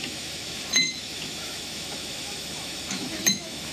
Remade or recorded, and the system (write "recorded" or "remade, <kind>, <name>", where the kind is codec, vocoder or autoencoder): remade, autoencoder, DAC-VAE